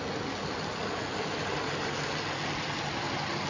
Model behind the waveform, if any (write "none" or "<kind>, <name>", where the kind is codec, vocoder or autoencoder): none